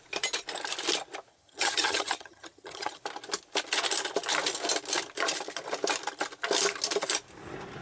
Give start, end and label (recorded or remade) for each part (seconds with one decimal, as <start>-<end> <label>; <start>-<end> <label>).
0.0-1.3 recorded; 1.3-3.0 remade; 3.0-7.8 recorded